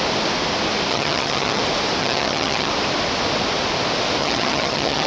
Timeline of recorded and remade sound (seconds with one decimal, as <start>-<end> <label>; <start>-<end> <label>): 0.0-0.9 recorded; 0.9-1.6 remade; 1.6-2.0 recorded; 2.0-2.7 remade; 2.7-4.2 recorded; 4.2-5.1 remade